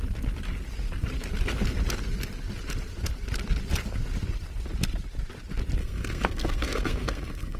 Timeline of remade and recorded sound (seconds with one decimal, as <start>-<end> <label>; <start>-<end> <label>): 0.0-5.8 recorded; 5.8-7.6 remade